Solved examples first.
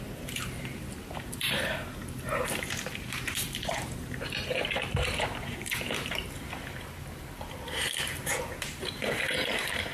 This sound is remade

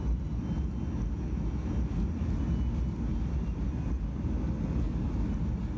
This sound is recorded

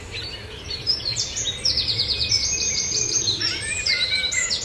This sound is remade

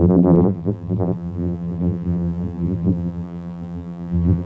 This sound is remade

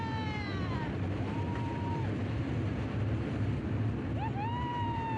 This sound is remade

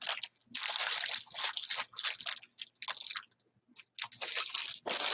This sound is recorded